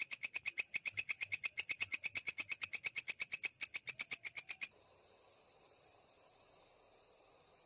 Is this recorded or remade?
recorded